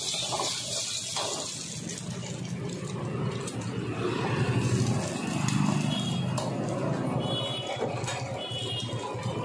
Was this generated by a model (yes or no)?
no